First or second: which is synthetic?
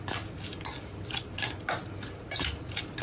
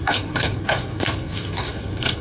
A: second